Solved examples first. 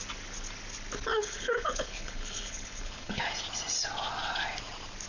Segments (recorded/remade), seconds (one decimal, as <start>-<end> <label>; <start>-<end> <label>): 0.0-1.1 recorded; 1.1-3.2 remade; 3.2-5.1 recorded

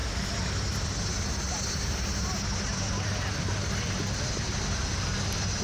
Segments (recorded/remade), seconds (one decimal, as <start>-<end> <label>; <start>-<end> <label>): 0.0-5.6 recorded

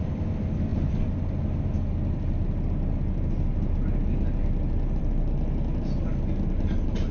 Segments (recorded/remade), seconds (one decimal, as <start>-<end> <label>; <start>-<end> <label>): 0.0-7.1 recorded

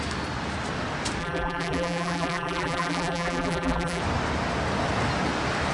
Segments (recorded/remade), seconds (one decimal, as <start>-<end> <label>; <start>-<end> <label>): 0.0-1.2 recorded; 1.2-4.0 remade; 4.0-5.7 recorded

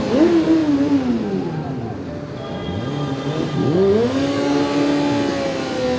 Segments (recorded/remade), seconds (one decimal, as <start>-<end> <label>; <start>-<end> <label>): 0.0-3.6 recorded; 3.6-4.6 remade; 4.6-6.0 recorded

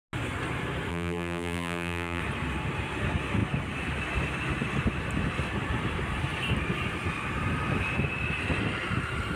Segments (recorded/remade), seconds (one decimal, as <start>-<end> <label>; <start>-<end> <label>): 0.0-0.9 recorded; 0.9-2.2 remade; 2.2-9.4 recorded

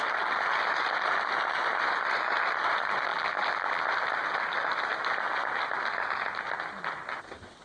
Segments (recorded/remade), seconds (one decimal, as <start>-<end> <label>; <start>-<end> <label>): 0.0-3.1 recorded; 3.1-3.8 remade; 3.8-7.6 recorded

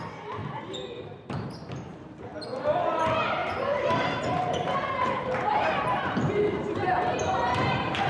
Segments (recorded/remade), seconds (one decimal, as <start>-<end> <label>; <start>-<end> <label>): 0.0-0.4 remade; 0.4-1.0 recorded; 1.0-2.3 remade; 2.3-3.0 recorded; 3.0-8.1 remade